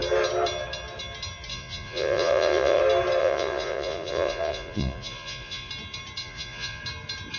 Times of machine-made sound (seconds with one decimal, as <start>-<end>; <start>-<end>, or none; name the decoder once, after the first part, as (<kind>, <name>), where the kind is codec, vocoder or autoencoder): 1.5-2.8 (vocoder, Vocos); 3.2-5.7; 6.2-6.8